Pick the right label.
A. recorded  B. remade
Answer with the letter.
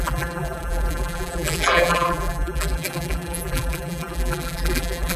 B